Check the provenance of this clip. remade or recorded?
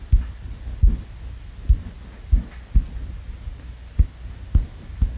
recorded